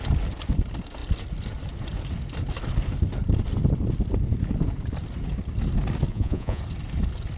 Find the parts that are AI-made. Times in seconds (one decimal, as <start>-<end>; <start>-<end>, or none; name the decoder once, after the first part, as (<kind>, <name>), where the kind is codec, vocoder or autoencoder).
6.1-6.6 (vocoder, Vocos)